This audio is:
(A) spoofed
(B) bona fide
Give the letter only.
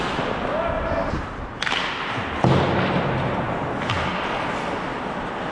B